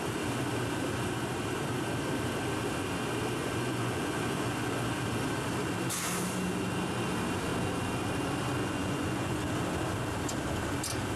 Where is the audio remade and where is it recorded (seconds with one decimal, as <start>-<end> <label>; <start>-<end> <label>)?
0.0-3.4 recorded; 3.4-4.8 remade; 4.8-8.6 recorded; 8.6-9.5 remade; 9.5-11.2 recorded